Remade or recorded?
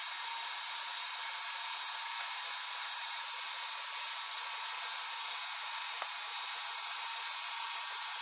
remade